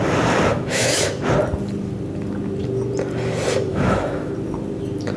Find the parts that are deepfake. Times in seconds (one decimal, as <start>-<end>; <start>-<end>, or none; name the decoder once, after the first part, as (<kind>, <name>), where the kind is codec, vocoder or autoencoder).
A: 0.5-1.1 (autoencoder, DAC-VAE); 3.7-4.3